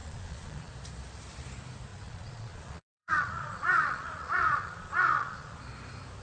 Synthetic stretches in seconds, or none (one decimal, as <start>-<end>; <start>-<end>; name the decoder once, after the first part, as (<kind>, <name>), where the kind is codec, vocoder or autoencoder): 0.0-0.7 (vocoder, Vocos); 1.9-5.6